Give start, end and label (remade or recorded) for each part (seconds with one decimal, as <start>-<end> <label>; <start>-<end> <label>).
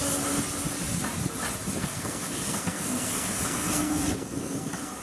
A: 0.0-1.8 recorded; 1.8-5.0 remade